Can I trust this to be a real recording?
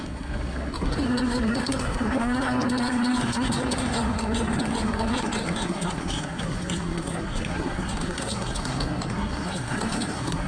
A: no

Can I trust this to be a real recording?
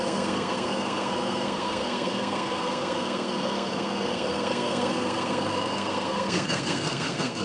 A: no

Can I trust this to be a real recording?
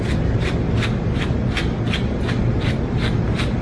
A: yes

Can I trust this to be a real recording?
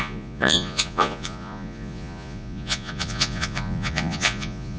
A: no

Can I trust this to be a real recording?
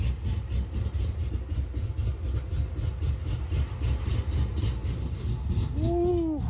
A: yes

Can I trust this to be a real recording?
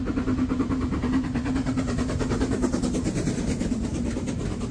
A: yes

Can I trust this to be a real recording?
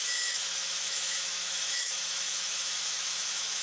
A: no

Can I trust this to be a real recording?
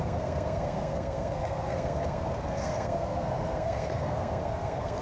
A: no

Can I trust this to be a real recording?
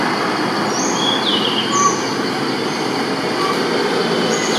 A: yes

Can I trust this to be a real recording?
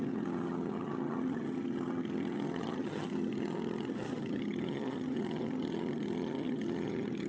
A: no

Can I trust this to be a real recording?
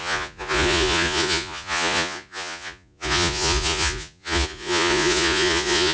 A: no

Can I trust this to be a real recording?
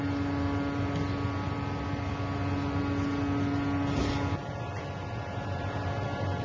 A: yes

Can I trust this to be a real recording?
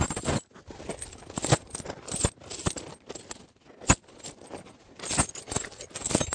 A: yes